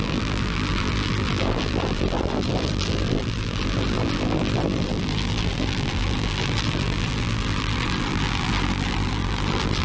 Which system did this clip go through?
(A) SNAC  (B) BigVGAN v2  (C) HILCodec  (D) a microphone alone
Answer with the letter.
B